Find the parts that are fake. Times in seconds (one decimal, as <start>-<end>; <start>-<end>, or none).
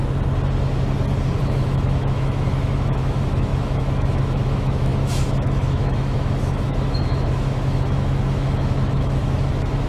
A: 1.4-9.9